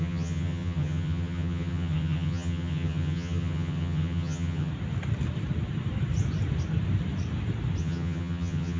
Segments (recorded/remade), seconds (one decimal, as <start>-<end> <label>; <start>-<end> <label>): 0.0-4.7 remade; 4.7-7.8 recorded; 7.8-8.8 remade